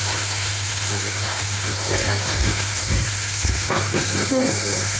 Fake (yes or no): yes